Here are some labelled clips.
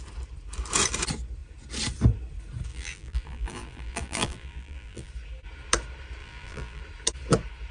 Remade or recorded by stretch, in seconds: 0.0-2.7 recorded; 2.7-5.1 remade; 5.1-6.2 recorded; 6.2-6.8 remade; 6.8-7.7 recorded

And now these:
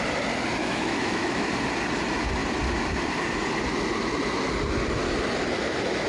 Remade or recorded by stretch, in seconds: 0.0-0.6 recorded; 0.6-1.5 remade; 1.5-6.1 recorded

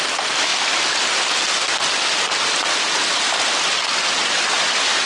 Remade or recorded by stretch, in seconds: 0.0-5.1 recorded

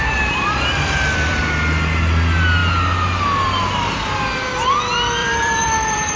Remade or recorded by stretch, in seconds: 0.0-1.4 remade; 1.4-5.2 recorded; 5.2-6.2 remade